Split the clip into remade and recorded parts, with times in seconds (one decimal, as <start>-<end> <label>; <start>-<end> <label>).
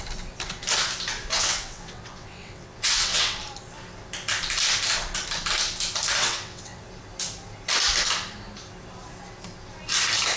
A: 0.0-1.3 recorded; 1.3-3.4 remade; 3.4-6.2 recorded; 6.2-6.8 remade; 6.8-10.4 recorded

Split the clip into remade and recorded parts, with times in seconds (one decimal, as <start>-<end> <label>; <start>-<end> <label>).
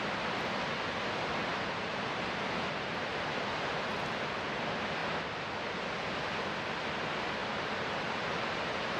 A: 0.0-1.5 recorded; 1.5-3.9 remade; 3.9-7.4 recorded; 7.4-9.0 remade